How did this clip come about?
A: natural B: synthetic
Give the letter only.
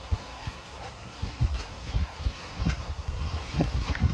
B